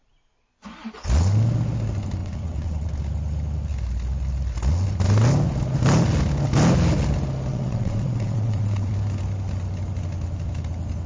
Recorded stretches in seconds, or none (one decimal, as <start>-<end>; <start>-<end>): 0.0-2.2; 2.9-7.5; 8.9-11.1

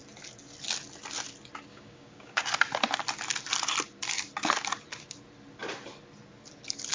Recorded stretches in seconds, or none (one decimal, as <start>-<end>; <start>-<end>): 0.0-1.7; 2.4-6.9

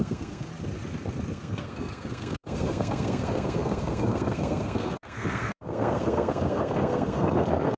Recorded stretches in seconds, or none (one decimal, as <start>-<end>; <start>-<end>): 0.5-1.3

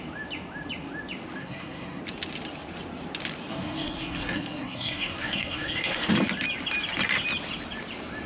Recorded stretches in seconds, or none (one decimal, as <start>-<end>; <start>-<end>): 0.0-1.4; 2.0-3.5; 6.1-8.3

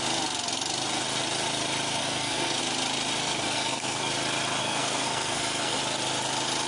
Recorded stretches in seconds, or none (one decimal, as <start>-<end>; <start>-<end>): 0.0-2.0; 2.6-3.2; 4.1-4.6; 5.8-6.7

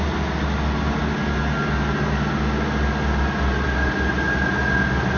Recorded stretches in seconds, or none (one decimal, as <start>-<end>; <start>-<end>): 0.0-5.2

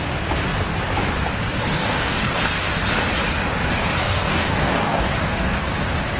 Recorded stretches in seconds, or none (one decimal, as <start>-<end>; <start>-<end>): 0.0-1.8; 2.4-4.0; 5.6-6.2

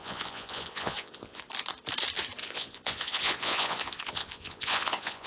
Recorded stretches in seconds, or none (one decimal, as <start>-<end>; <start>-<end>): 1.4-2.4